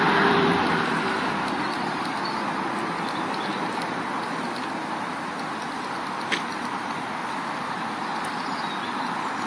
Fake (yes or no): yes